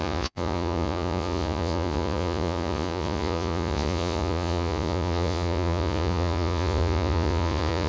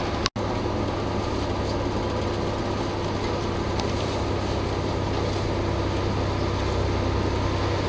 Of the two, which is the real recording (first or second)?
second